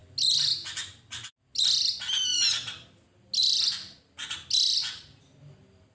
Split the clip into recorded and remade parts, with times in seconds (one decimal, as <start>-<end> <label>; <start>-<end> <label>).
0.0-5.9 recorded